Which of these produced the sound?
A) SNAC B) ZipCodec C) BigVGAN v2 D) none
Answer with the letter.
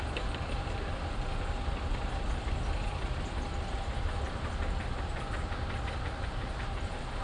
D